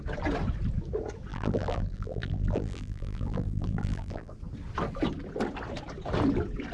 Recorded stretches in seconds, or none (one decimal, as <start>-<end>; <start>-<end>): 0.0-1.3; 4.3-6.7